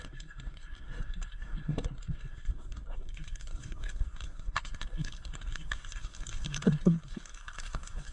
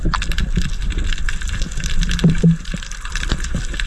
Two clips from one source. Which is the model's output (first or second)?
first